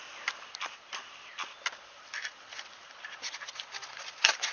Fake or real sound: real